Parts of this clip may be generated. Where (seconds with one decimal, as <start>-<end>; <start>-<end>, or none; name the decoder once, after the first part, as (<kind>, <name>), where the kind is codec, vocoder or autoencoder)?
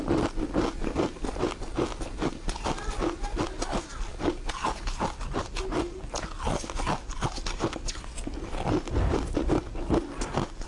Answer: none